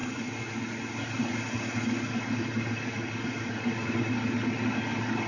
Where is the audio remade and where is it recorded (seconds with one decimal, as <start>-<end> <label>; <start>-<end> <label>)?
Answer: 0.0-5.3 recorded